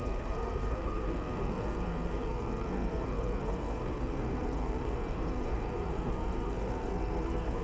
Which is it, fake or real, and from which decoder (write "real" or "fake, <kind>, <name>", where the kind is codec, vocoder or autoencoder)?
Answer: fake, codec, SNAC